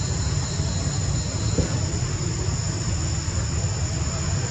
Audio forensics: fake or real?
real